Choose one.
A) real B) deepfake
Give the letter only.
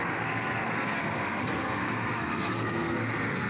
B